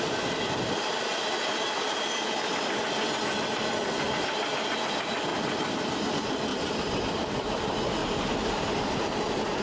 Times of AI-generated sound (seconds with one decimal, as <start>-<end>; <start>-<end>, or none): 6.5-7.0; 8.0-9.1